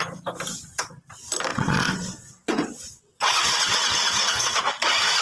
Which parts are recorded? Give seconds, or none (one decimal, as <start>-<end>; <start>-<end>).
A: 0.0-1.5; 4.6-5.2